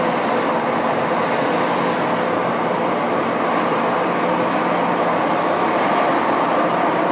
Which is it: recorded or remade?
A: recorded